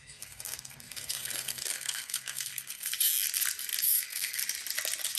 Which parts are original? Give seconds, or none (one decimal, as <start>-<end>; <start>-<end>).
2.9-3.8; 4.4-5.2

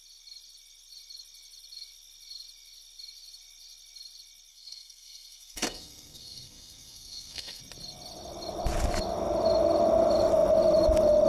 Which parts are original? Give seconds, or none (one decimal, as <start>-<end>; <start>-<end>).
0.0-4.5; 7.6-11.3

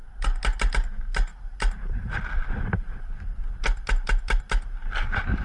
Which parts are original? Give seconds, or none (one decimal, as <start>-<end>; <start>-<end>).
0.0-1.3; 4.5-5.4

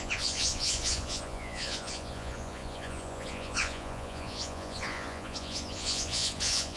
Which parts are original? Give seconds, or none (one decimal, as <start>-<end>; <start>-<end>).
none

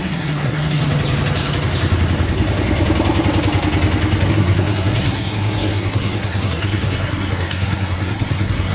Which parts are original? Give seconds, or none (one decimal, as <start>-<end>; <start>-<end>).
0.8-4.3

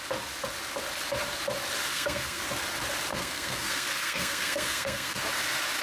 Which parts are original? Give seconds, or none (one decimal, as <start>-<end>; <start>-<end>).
0.0-1.9; 2.4-3.1; 5.2-5.8

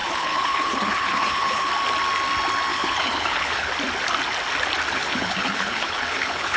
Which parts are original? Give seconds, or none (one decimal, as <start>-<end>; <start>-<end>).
1.7-2.7; 3.7-4.9